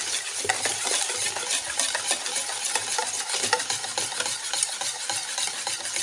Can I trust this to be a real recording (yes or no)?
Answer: yes